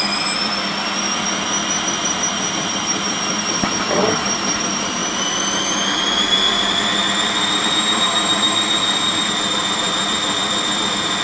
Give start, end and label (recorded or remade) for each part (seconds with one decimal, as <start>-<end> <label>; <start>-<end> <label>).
0.0-0.5 remade; 0.5-1.9 recorded; 1.9-5.0 remade; 5.0-6.2 recorded; 6.2-11.2 remade